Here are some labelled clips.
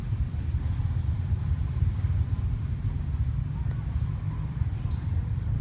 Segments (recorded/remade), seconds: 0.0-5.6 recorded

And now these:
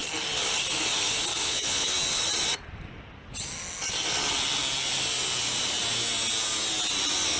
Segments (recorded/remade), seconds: 0.0-1.3 recorded; 1.3-1.9 remade; 1.9-7.4 recorded

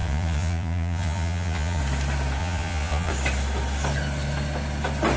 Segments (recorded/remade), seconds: 0.0-1.8 remade; 1.8-2.4 recorded; 2.4-3.1 remade; 3.1-5.2 recorded

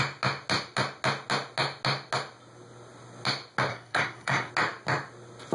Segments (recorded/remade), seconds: 0.0-3.7 recorded; 3.7-4.5 remade; 4.5-5.5 recorded

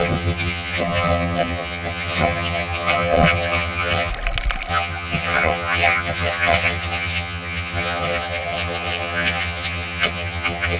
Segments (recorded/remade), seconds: 0.0-4.1 remade; 4.1-4.7 recorded; 4.7-10.8 remade

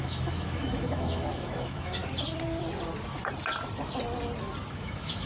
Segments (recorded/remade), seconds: 0.0-2.0 remade; 2.0-4.7 recorded; 4.7-5.3 remade

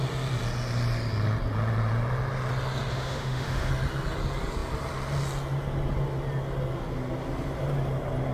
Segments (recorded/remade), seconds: 0.0-2.9 recorded; 2.9-3.7 remade; 3.7-8.3 recorded

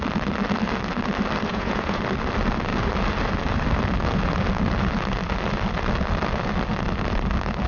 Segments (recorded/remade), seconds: 0.0-1.5 recorded; 1.5-2.0 remade; 2.0-7.7 recorded